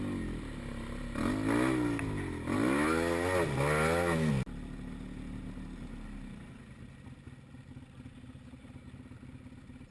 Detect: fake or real real